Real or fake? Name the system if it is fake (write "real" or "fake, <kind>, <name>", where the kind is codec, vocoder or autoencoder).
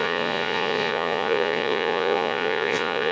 fake, vocoder, Vocos